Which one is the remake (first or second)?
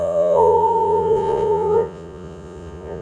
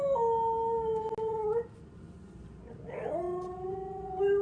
first